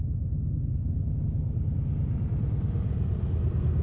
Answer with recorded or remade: recorded